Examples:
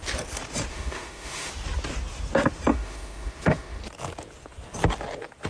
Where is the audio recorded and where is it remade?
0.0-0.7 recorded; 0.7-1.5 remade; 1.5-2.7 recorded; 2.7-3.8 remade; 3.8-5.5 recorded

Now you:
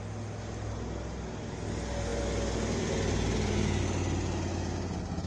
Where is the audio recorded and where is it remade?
0.0-5.3 recorded

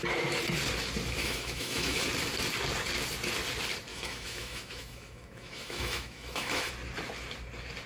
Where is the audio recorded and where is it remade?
0.0-1.2 recorded; 1.2-2.1 remade; 2.1-3.9 recorded; 3.9-6.7 remade; 6.7-7.9 recorded

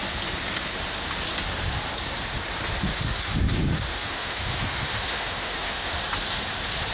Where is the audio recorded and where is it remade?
0.0-2.9 recorded; 2.9-6.0 remade; 6.0-6.9 recorded

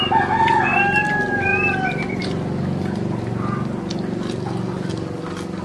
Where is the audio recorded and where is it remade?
0.0-5.6 recorded